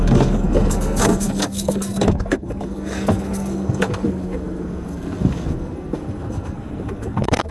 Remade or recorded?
remade